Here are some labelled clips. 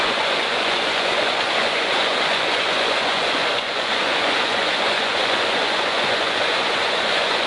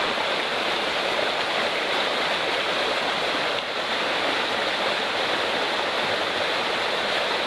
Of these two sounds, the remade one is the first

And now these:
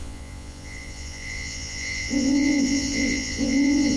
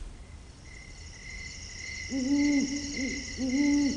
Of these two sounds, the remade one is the first